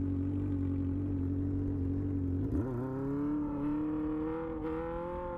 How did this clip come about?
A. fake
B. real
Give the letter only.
B